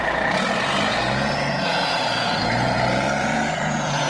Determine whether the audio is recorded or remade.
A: remade